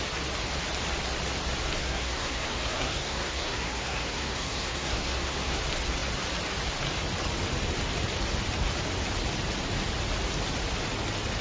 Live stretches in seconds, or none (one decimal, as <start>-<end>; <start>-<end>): 0.0-1.8; 5.6-11.4